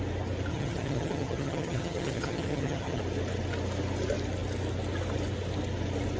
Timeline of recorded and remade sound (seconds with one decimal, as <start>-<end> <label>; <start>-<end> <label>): 0.0-0.5 recorded; 0.5-3.0 remade; 3.0-6.2 recorded